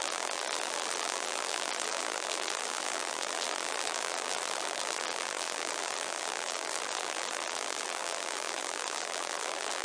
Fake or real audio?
fake